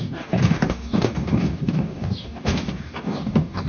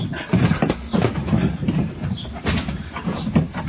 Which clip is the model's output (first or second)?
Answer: first